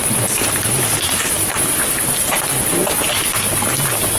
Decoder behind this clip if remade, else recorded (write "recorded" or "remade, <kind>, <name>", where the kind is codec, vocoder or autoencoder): recorded